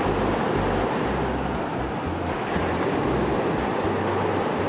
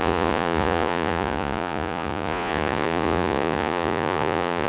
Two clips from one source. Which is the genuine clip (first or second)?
first